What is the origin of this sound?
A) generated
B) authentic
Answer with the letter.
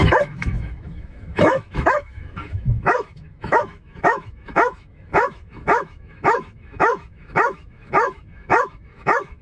A